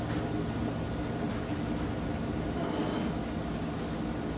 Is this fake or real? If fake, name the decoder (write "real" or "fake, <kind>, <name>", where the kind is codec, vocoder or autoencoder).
real